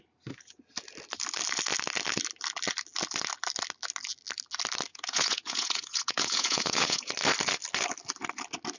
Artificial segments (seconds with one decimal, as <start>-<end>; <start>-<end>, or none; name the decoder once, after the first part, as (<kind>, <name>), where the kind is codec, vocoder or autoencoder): 4.9-7.1 (vocoder, Vocos)